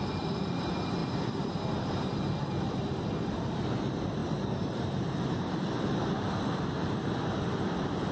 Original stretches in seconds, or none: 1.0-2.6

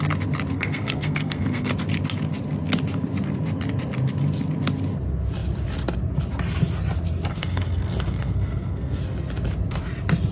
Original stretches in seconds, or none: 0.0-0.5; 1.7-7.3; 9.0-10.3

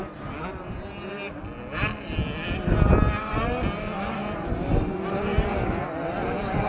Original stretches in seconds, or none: 0.0-6.7